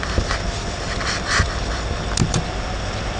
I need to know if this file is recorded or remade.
recorded